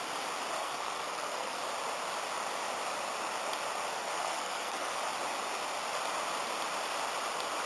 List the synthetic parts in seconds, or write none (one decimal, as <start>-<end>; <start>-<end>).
0.6-1.6; 3.9-5.0